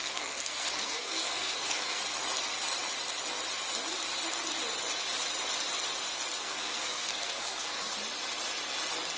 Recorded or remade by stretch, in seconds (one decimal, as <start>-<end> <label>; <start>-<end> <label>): 0.0-2.0 remade; 2.0-6.4 recorded; 6.4-7.9 remade; 7.9-9.2 recorded

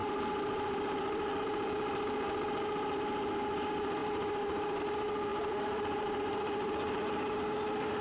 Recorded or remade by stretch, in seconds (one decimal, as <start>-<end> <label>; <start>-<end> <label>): 0.0-1.7 remade; 1.7-4.0 recorded; 4.0-4.8 remade; 4.8-5.3 recorded; 5.3-6.9 remade; 6.9-8.0 recorded

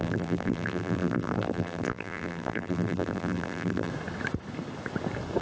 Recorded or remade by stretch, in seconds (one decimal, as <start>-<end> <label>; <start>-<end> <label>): 0.0-3.9 remade; 3.9-5.4 recorded

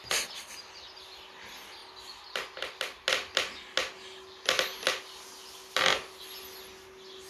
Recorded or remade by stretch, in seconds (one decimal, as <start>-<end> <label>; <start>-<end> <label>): 0.0-7.3 recorded

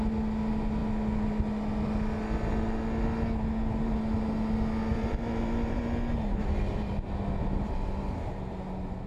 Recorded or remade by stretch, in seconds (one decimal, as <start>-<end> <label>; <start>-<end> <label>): 0.0-4.9 recorded; 4.9-5.8 remade; 5.8-6.4 recorded; 6.4-6.9 remade; 6.9-9.1 recorded

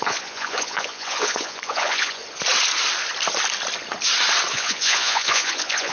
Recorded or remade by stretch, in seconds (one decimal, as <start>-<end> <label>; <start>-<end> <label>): 0.0-2.2 remade; 2.2-4.5 recorded; 4.5-5.9 remade

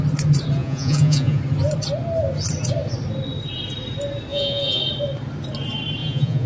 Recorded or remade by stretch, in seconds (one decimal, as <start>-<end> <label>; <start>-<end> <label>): 0.0-0.6 recorded; 0.6-1.4 remade; 1.4-4.3 recorded; 4.3-4.8 remade; 4.8-6.0 recorded; 6.0-6.5 remade

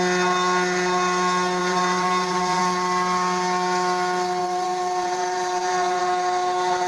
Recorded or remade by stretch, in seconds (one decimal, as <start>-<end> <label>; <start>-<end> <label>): 0.0-1.6 recorded; 1.6-2.6 remade; 2.6-4.4 recorded; 4.4-6.0 remade; 6.0-6.9 recorded